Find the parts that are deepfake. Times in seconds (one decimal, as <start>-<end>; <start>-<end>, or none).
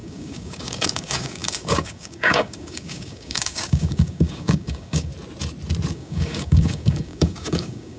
0.0-5.1; 5.9-8.0